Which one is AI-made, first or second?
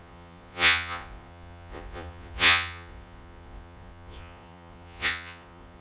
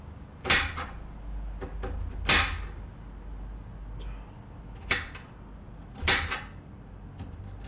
first